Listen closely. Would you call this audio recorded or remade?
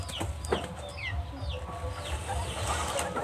recorded